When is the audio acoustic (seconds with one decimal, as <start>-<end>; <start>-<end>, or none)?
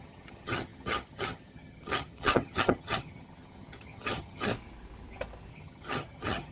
4.5-5.5